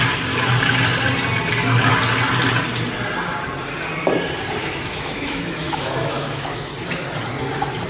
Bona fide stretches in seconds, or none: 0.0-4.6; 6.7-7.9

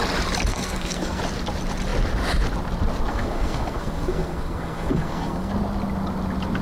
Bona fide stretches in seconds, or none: 0.0-0.5; 1.2-3.1; 5.5-6.6

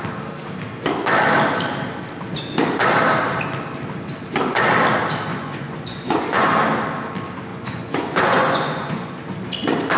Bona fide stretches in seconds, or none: 0.0-5.3; 6.6-7.5; 9.2-10.0

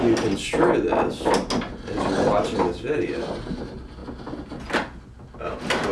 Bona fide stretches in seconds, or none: 0.0-5.9

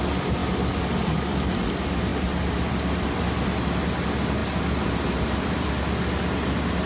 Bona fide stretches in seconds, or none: 0.0-4.4; 5.7-6.9

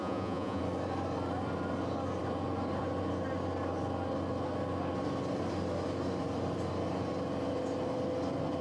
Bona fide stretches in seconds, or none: 0.6-8.6